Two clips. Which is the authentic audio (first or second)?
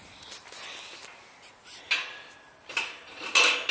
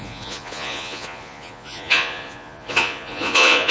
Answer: first